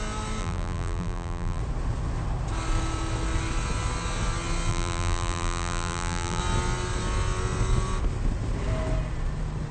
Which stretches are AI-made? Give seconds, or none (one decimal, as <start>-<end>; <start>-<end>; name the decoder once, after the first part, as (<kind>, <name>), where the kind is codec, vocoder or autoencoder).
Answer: 0.4-1.6 (vocoder, BigVGAN v2); 4.7-6.4